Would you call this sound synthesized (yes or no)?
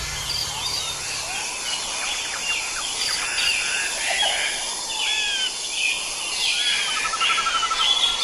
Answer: no